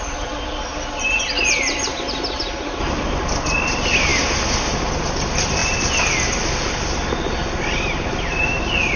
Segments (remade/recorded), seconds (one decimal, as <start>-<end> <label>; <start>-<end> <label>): 0.0-9.0 recorded